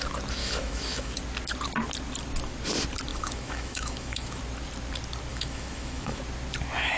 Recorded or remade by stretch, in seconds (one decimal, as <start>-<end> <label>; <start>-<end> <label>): 0.0-0.4 recorded; 0.4-1.2 remade; 1.2-3.1 recorded; 3.1-4.4 remade; 4.4-5.3 recorded; 5.3-6.2 remade; 6.2-7.0 recorded